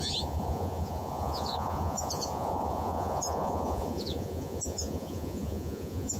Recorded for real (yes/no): no